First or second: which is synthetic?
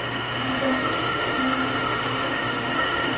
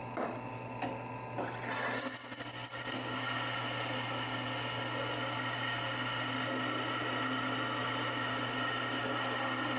first